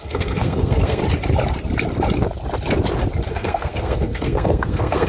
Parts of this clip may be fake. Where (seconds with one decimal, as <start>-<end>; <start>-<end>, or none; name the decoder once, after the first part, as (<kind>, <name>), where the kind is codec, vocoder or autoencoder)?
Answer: 0.0-1.0 (codec, SNAC); 3.3-5.1